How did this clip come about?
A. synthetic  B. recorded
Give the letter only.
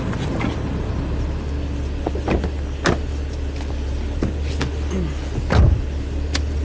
B